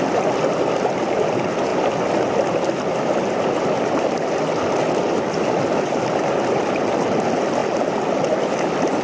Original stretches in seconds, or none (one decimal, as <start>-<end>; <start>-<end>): 0.0-9.0

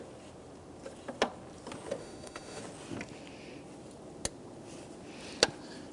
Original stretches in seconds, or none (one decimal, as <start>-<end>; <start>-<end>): 0.0-2.0; 2.6-5.9

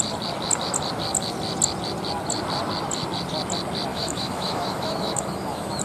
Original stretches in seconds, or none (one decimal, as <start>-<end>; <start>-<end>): 0.0-3.9

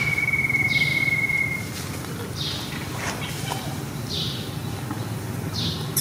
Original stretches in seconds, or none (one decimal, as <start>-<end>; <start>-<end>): 0.0-6.0

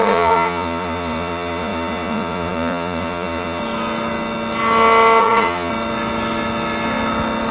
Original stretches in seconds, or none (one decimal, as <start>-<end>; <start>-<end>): 3.6-5.2; 5.7-7.5

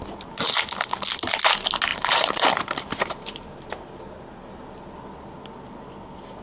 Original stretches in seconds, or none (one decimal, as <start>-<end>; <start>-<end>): 0.0-1.9; 3.7-6.4